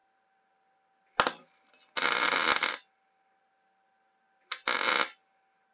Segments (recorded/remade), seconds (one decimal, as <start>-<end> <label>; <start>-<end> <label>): 0.0-5.7 recorded